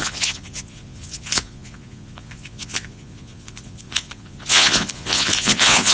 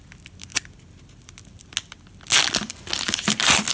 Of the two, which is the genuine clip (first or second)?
second